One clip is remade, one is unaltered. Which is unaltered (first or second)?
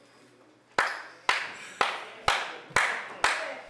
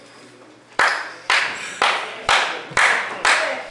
first